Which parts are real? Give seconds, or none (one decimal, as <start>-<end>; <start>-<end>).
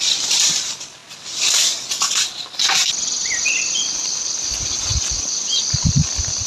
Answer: 1.0-2.1